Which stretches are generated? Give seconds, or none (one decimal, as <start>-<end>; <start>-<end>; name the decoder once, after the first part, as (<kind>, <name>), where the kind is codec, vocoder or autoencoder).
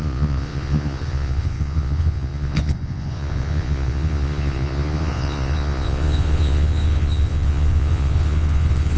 0.0-9.0 (vocoder, Vocos)